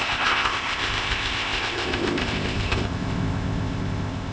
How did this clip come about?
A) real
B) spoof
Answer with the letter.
B